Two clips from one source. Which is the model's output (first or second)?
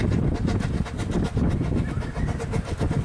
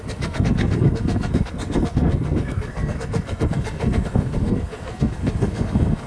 second